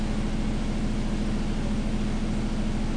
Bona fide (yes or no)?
yes